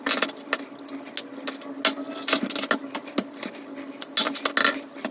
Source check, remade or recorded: recorded